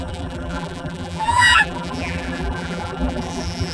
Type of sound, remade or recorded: remade